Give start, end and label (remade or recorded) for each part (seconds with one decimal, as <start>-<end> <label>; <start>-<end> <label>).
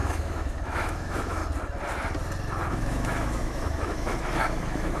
0.0-1.4 remade; 1.4-2.7 recorded; 2.7-5.0 remade